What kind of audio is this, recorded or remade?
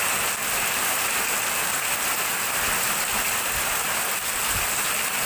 recorded